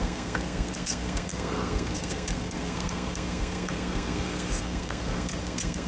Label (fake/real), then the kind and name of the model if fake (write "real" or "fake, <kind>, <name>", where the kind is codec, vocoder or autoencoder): fake, codec, SNAC